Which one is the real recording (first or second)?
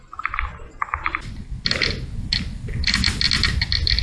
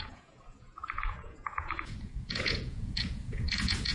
first